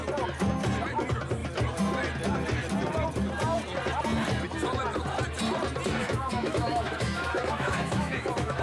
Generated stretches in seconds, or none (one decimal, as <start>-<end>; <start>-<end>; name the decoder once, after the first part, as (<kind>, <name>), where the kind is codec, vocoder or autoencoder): 6.0-8.6 (autoencoder, DAC-VAE)